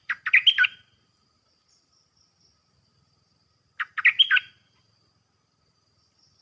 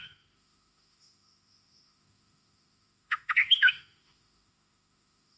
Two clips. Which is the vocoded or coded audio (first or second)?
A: second